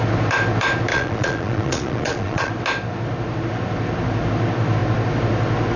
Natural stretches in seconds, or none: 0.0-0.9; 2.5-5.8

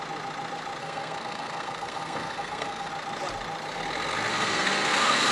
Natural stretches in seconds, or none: 0.0-0.8; 2.9-4.3

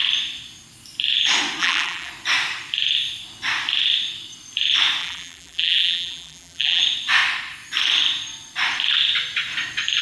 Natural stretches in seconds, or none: 0.0-1.6; 2.1-5.0; 6.8-10.0